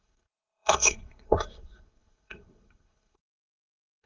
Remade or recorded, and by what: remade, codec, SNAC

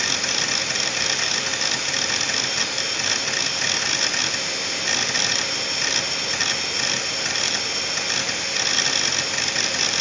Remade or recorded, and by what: recorded